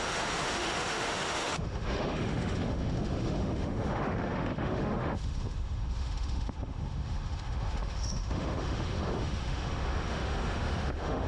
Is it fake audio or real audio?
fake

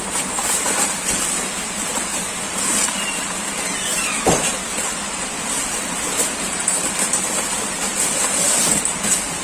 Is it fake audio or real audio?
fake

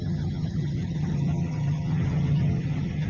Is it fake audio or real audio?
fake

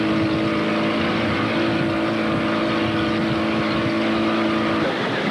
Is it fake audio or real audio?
real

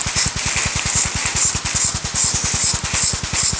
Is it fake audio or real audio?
real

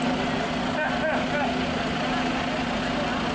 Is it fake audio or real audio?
real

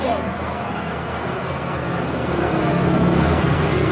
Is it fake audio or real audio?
fake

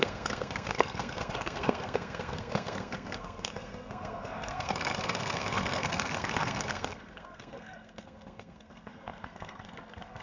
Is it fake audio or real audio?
fake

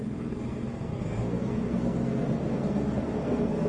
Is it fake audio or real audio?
fake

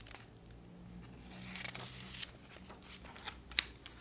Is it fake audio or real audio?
real